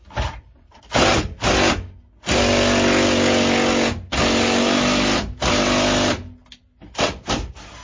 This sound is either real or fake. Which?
real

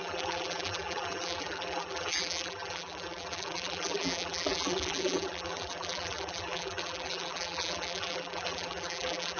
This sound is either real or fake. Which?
fake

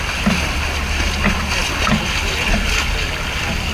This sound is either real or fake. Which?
real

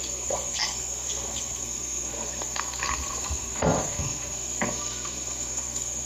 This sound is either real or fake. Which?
fake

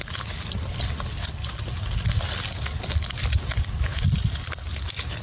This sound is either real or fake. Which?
real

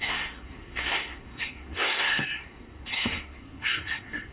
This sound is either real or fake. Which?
fake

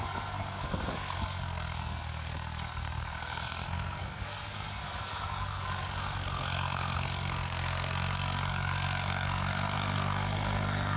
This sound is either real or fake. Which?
fake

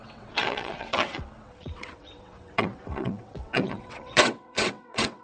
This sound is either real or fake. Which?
fake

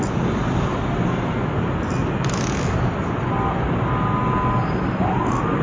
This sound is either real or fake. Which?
real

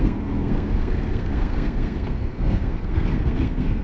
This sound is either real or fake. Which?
fake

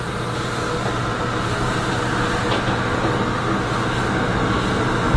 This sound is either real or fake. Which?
real